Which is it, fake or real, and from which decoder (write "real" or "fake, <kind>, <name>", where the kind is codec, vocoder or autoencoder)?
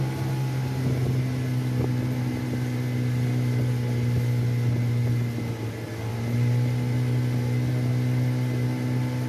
real